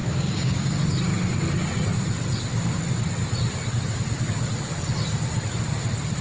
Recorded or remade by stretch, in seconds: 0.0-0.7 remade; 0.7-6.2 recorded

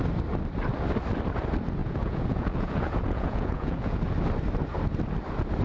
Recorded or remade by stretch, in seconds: 0.0-1.8 recorded; 1.8-4.0 remade; 4.0-5.6 recorded

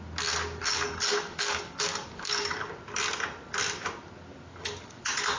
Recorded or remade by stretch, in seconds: 0.0-0.6 recorded; 0.6-2.7 remade; 2.7-4.5 recorded; 4.5-5.0 remade; 5.0-5.4 recorded

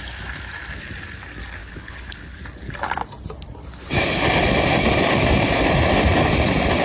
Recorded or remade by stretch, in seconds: 0.0-1.6 recorded; 1.6-2.4 remade; 2.4-6.8 recorded

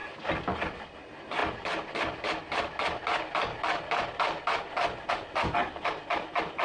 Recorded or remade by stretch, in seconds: 0.0-6.6 recorded